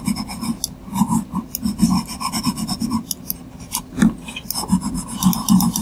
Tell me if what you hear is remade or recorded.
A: recorded